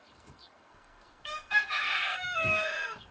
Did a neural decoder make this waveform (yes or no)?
yes